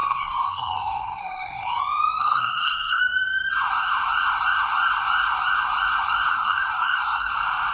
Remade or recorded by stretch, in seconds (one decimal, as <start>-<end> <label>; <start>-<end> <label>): 0.0-1.8 remade; 1.8-2.2 recorded; 2.2-3.0 remade; 3.0-6.3 recorded; 6.3-7.3 remade; 7.3-7.7 recorded